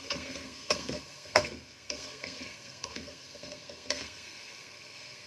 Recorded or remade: remade